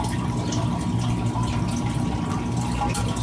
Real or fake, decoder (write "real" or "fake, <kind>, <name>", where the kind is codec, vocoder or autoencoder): real